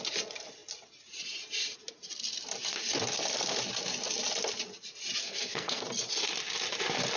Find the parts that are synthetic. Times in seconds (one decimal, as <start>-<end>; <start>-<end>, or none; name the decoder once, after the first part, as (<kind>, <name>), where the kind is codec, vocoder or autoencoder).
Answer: 5.2-5.8 (codec, SNAC)